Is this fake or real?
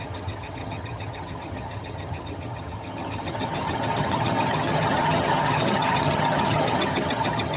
fake